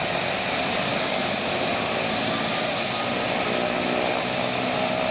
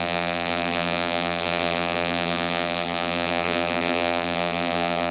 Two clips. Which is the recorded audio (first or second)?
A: first